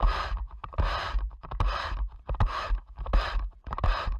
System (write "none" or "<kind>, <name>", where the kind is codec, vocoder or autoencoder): vocoder, BigVGAN v2